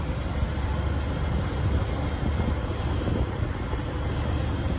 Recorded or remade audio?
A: recorded